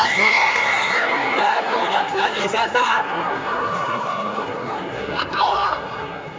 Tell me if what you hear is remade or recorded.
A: remade